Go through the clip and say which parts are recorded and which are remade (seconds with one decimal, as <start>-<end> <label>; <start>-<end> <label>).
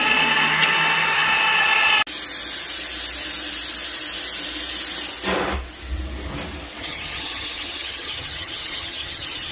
0.0-6.8 recorded; 6.8-9.5 remade